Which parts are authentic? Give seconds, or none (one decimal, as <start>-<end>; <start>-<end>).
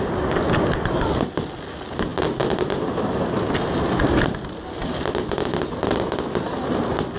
0.0-7.2